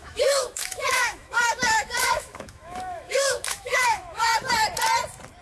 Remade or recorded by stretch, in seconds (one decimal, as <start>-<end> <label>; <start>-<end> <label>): 0.0-4.3 remade; 4.3-5.4 recorded